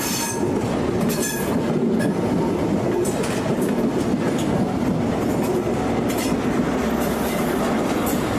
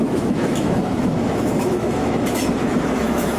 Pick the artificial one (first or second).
second